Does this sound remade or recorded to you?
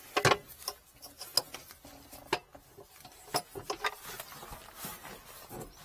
recorded